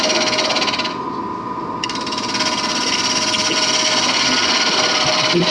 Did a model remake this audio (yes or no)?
no